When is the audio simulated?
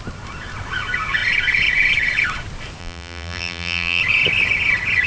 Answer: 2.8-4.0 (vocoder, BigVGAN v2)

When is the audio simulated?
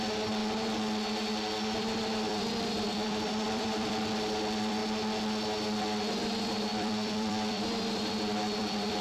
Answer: 0.0-0.4 (vocoder, BigVGAN v2); 1.3-4.8; 6.2-9.0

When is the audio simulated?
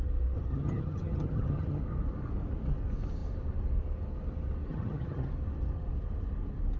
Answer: 0.5-1.8 (vocoder, HiFi-GAN); 4.7-5.3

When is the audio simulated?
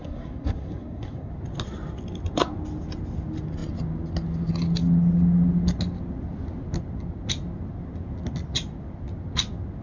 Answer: 0.0-1.3 (codec, SNAC)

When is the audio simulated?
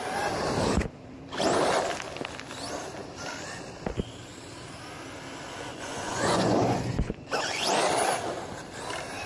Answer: 5.7-7.8 (vocoder, Vocos)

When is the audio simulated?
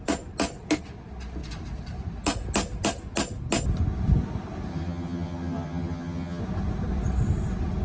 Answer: 4.7-6.4 (vocoder, HiFi-GAN)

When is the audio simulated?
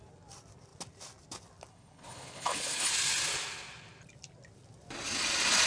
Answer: 1.7-2.9 (codec, HILCodec)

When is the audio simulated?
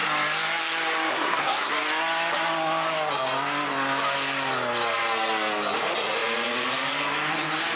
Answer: 1.1-1.7 (codec, SNAC)